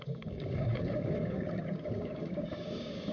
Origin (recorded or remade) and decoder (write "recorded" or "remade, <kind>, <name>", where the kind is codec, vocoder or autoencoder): remade, codec, DAC